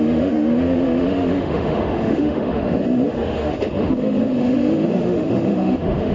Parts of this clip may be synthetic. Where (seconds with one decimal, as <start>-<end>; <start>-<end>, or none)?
0.0-6.1